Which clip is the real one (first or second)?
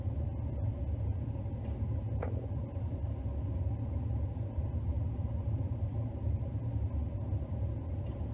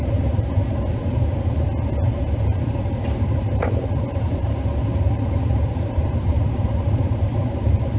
first